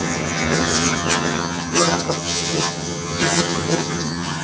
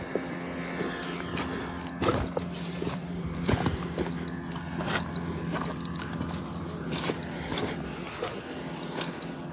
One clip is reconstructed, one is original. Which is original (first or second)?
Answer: second